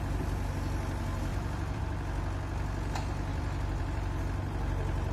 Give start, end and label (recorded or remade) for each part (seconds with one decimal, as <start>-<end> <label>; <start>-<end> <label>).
0.0-1.3 recorded; 1.3-1.8 remade; 1.8-3.3 recorded; 3.3-4.2 remade; 4.2-5.1 recorded